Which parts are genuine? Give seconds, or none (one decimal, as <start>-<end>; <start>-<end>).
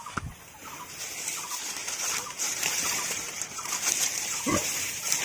0.0-1.8